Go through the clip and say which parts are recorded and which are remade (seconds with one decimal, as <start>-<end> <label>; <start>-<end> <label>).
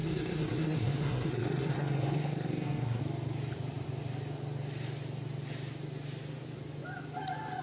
0.0-3.0 remade; 3.0-7.6 recorded